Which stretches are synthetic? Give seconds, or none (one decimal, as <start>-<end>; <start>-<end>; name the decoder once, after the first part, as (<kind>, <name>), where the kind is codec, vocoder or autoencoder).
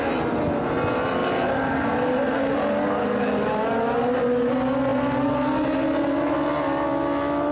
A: 1.2-1.9 (vocoder, BigVGAN v2)